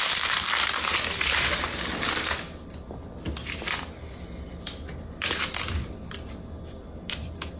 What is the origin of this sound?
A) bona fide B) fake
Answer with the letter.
A